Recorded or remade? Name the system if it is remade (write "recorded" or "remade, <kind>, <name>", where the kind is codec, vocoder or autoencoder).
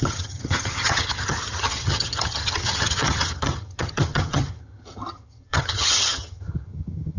remade, vocoder, HiFi-GAN